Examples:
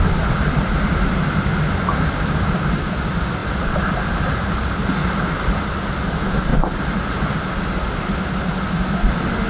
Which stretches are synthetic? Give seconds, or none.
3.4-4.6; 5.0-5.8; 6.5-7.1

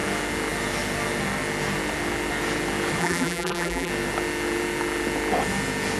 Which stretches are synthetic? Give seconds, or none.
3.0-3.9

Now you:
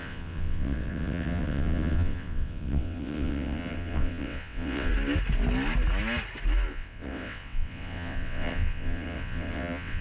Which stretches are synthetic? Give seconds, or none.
0.0-4.9; 6.7-10.0

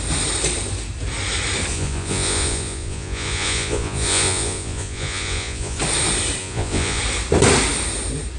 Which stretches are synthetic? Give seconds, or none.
1.7-5.8; 6.4-7.0